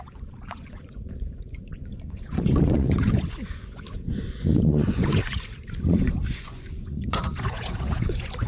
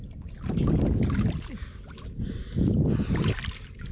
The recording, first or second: second